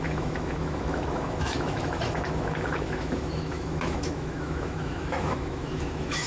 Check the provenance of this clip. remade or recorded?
remade